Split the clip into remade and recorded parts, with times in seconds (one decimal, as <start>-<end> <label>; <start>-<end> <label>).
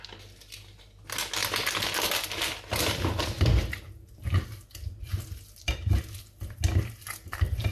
0.0-7.7 recorded